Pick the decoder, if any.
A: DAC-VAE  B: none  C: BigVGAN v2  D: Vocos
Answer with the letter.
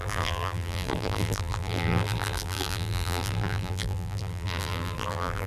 C